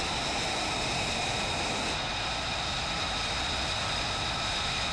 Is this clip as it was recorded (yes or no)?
yes